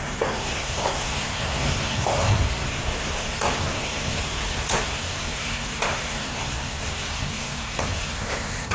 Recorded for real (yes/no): no